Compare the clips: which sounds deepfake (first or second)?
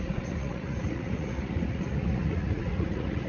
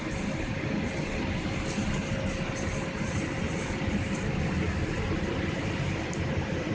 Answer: first